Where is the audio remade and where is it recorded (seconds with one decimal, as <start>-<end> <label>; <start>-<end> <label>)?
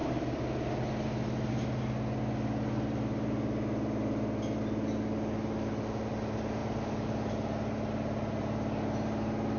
0.0-9.6 recorded